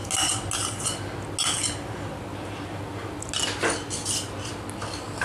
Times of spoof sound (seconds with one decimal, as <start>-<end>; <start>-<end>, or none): none